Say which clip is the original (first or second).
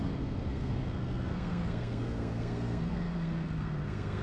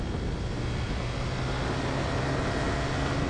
second